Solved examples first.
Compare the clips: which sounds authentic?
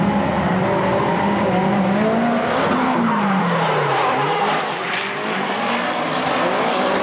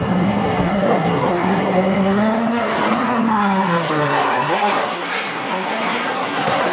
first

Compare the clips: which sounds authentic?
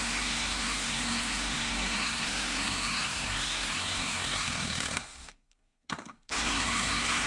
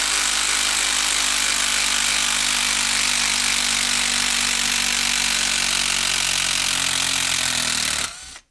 second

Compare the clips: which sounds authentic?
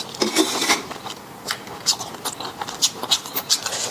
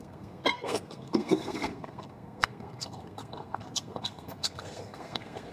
first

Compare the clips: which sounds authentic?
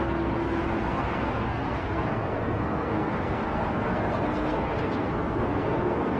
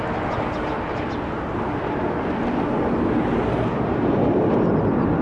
second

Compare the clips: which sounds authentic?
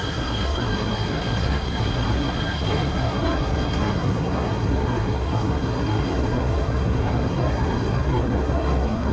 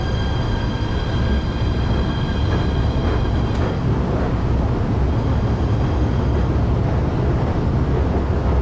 second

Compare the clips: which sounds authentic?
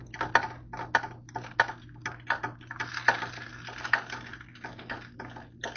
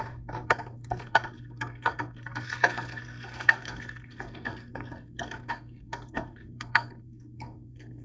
first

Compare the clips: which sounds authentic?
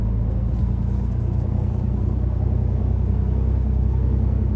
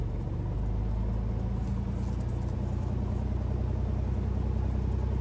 second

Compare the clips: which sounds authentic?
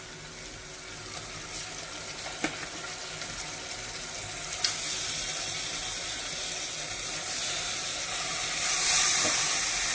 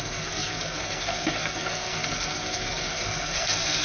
first